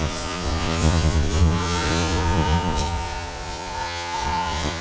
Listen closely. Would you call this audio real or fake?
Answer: fake